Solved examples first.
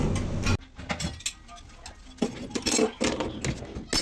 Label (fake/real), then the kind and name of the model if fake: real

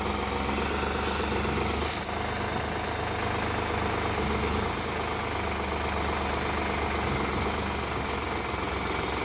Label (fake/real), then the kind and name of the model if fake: real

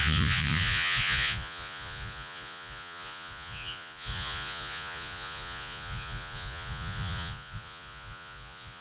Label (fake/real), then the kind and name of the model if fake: fake, vocoder, Vocos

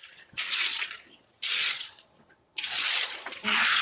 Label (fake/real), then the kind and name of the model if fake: fake, vocoder, Vocos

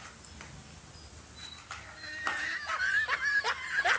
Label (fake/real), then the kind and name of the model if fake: real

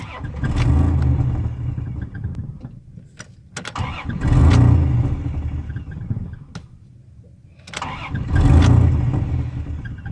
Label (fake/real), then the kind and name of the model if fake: real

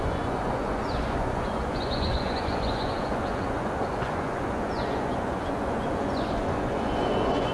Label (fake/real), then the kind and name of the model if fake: fake, vocoder, Vocos